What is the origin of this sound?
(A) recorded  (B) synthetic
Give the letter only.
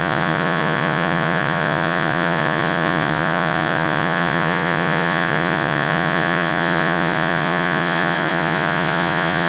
B